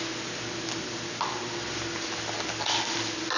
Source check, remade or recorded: recorded